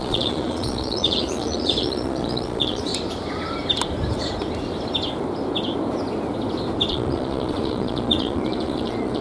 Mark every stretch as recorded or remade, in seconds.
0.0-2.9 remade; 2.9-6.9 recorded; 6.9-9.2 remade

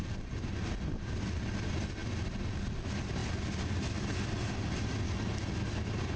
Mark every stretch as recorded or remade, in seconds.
0.0-6.2 recorded

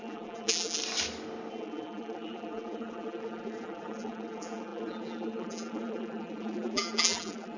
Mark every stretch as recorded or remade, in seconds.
0.0-0.8 remade; 0.8-1.5 recorded; 1.5-7.6 remade